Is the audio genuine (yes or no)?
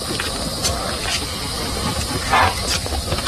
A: yes